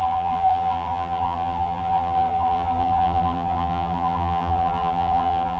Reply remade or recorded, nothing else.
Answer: remade